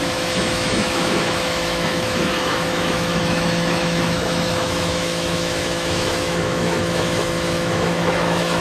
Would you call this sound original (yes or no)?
no